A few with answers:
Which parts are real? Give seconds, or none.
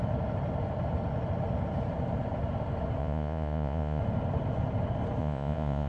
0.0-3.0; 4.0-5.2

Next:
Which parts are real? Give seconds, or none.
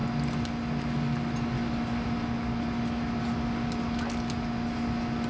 0.0-5.3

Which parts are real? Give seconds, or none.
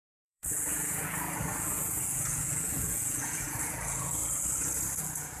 4.2-5.0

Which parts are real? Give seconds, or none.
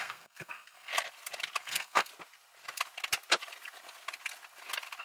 0.9-1.6; 2.1-5.0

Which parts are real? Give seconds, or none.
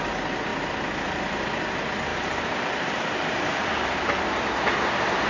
0.0-2.1; 4.2-5.3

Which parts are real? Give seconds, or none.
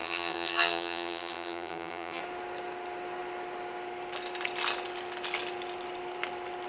2.2-6.7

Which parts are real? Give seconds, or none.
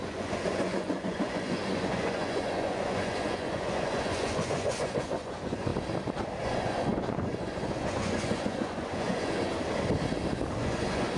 5.7-6.4; 9.5-10.6